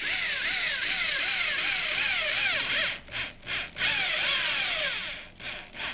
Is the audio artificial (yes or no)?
no